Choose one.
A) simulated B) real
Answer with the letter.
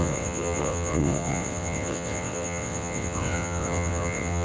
A